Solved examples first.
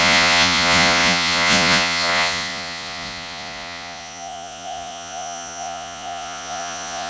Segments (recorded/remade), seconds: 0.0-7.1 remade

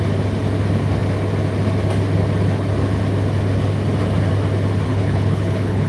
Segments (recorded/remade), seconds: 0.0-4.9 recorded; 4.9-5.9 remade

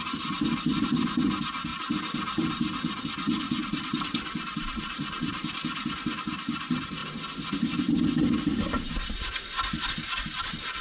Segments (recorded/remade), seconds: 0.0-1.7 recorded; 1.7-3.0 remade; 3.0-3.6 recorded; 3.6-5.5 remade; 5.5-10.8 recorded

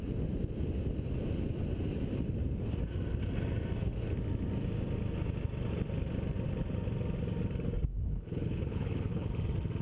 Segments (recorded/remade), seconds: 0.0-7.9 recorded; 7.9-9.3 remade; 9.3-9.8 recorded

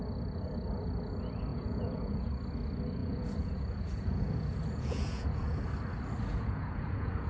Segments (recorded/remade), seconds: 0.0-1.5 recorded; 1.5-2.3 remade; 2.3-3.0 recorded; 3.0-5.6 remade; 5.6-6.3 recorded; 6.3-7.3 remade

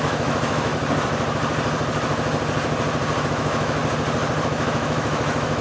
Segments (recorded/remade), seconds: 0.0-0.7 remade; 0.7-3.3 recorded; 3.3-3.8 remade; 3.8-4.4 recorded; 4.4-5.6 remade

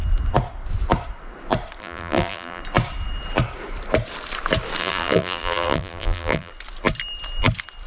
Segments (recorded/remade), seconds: 0.0-1.8 recorded; 1.8-2.6 remade; 2.6-4.8 recorded; 4.8-6.5 remade; 6.5-7.9 recorded

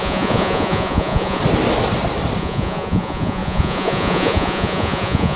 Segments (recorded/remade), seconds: 0.0-1.4 remade; 1.4-2.4 recorded; 2.4-5.4 remade